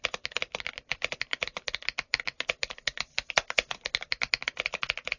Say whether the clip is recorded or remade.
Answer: recorded